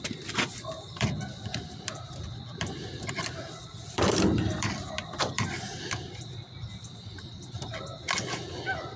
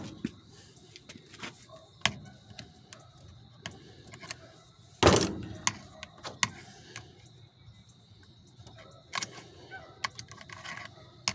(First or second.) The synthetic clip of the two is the first